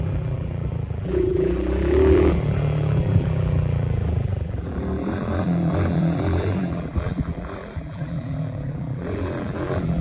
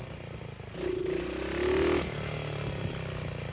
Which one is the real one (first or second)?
second